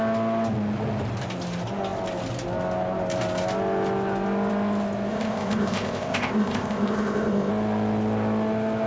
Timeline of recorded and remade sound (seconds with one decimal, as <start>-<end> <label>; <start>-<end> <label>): 0.0-5.1 recorded; 5.1-7.5 remade; 7.5-8.9 recorded